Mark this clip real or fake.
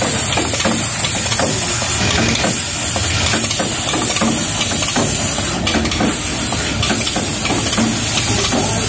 real